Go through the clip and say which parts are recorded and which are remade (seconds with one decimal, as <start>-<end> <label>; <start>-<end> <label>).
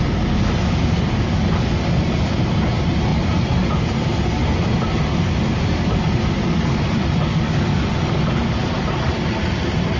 0.0-10.0 recorded